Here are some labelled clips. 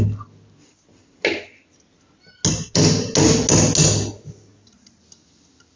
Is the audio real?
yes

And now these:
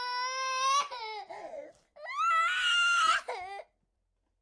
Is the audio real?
yes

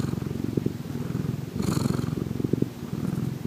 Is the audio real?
yes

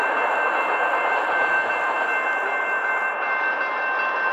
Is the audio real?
yes